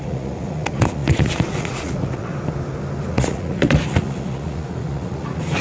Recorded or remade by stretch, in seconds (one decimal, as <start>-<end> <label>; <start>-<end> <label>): 0.0-2.3 remade; 2.3-3.1 recorded; 3.1-5.6 remade